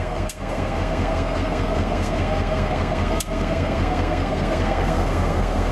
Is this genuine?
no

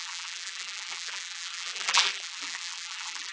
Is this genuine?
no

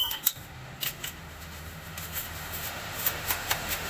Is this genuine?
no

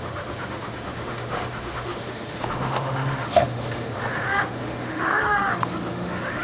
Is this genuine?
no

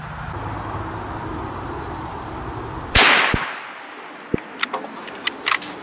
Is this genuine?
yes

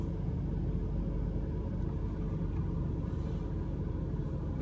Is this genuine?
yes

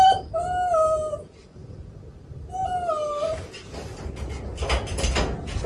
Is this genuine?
yes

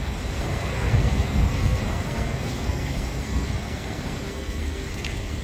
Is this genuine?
no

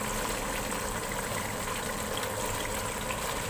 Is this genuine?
yes